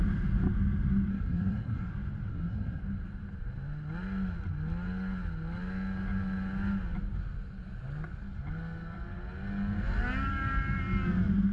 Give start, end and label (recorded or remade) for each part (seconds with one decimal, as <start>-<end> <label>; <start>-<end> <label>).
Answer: 0.0-1.1 recorded; 1.1-1.9 remade; 1.9-2.3 recorded; 2.3-2.8 remade; 2.8-11.5 recorded